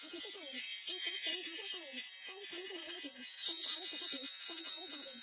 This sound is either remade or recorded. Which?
remade